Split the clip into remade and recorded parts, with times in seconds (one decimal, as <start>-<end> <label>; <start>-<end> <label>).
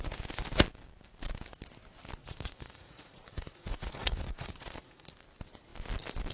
0.0-2.2 recorded; 2.2-5.1 remade; 5.1-6.3 recorded